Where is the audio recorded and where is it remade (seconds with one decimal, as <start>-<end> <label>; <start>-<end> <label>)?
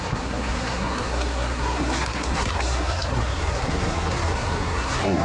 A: 0.0-5.2 remade